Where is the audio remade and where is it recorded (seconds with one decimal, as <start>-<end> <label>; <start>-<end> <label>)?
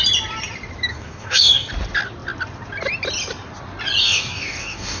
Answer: 0.0-0.9 recorded; 0.9-1.7 remade; 1.7-4.0 recorded; 4.0-5.0 remade